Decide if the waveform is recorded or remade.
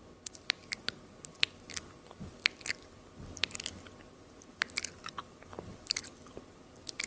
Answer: recorded